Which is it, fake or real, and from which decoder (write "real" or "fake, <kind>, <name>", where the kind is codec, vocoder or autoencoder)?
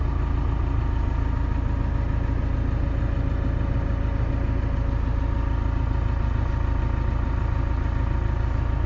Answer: real